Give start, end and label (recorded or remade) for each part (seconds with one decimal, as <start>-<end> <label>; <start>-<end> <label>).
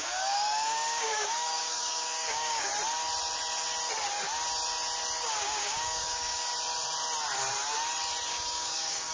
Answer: 0.0-2.7 remade; 2.7-5.3 recorded; 5.3-6.5 remade; 6.5-8.3 recorded; 8.3-9.1 remade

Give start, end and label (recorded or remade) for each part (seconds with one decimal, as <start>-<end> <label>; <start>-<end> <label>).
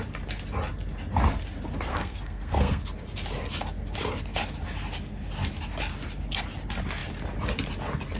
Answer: 0.0-1.9 recorded; 1.9-2.8 remade; 2.8-8.2 recorded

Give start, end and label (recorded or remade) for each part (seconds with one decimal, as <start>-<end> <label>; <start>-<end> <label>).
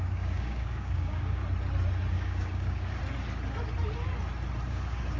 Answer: 0.0-1.4 remade; 1.4-2.1 recorded; 2.1-3.0 remade; 3.0-4.7 recorded; 4.7-5.2 remade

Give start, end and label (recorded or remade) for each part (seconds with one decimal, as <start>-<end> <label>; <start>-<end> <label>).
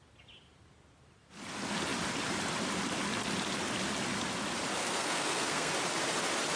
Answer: 0.0-4.8 recorded; 4.8-5.7 remade; 5.7-6.6 recorded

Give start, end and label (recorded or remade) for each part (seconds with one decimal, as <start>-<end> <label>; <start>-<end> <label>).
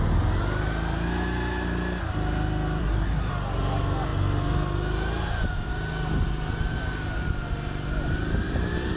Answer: 0.0-2.8 recorded; 2.8-3.3 remade; 3.3-9.0 recorded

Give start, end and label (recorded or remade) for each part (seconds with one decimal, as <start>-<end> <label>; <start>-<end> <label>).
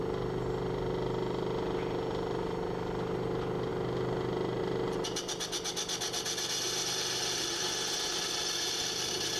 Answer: 0.0-9.4 recorded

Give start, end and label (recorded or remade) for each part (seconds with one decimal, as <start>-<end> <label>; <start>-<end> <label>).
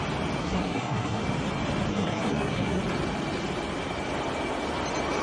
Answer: 0.0-0.4 recorded; 0.4-1.2 remade; 1.2-1.9 recorded; 1.9-2.8 remade; 2.8-5.2 recorded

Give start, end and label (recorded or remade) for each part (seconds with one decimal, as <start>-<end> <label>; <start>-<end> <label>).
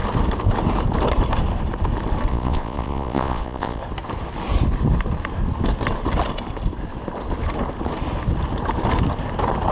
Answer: 0.0-2.3 recorded; 2.3-3.8 remade; 3.8-9.7 recorded